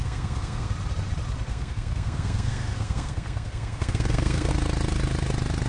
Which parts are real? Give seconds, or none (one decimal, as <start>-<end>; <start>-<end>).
0.7-1.5; 4.5-5.7